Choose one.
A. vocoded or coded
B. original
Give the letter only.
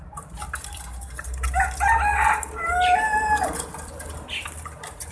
B